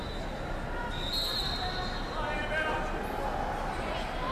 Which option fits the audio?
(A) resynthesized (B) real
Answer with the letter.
B